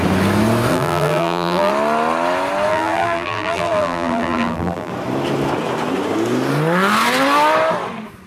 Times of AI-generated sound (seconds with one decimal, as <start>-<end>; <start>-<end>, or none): 0.7-1.7; 2.7-4.9